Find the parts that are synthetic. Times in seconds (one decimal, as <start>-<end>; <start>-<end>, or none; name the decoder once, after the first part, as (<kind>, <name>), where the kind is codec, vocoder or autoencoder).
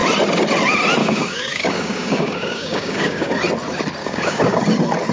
1.0-3.3 (codec, DAC); 4.0-4.6